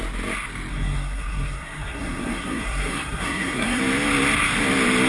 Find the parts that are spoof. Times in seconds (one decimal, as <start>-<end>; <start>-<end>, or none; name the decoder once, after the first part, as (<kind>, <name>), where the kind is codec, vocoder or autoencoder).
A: 0.7-3.8 (codec, SNAC)